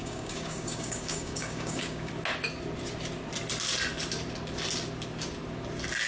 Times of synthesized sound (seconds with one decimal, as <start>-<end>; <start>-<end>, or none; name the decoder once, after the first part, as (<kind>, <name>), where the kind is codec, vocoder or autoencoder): 0.0-2.1 (codec, DAC)